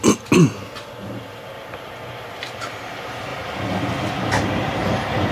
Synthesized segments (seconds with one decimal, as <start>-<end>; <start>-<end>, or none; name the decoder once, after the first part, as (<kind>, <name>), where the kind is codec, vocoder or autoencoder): none